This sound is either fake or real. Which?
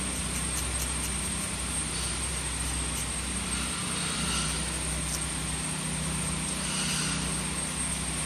real